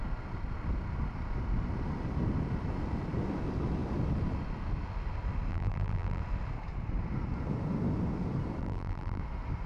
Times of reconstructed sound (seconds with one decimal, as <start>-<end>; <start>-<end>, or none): 5.5-6.2; 8.6-9.2